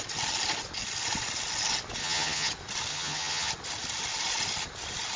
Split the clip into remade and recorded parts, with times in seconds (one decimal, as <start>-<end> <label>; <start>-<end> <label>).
0.0-2.0 recorded; 2.0-2.5 remade; 2.5-2.9 recorded; 2.9-3.5 remade; 3.5-5.2 recorded